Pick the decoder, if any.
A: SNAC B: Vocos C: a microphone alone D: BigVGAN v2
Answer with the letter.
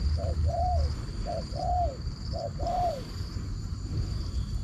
D